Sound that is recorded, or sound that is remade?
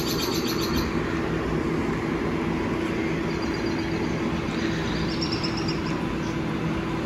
recorded